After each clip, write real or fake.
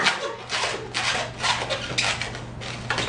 real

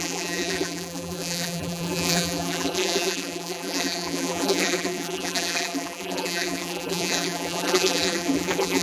fake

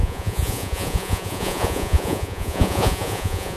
fake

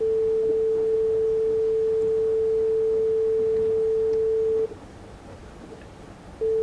real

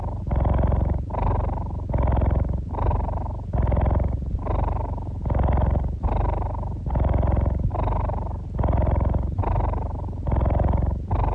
real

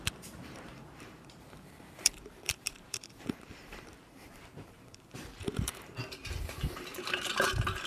fake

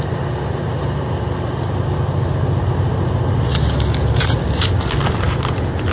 real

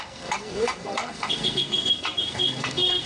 fake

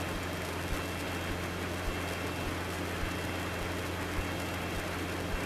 real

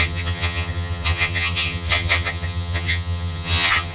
fake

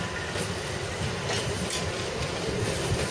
real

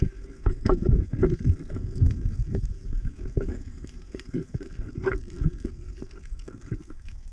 fake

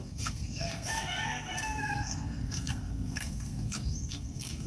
fake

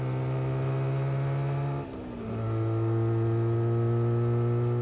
real